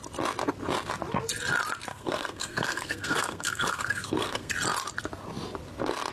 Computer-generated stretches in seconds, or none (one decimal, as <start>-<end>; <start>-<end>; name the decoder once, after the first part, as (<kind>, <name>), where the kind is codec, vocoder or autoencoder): 1.9-4.5 (codec, SNAC)